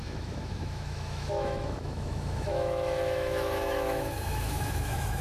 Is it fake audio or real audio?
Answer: fake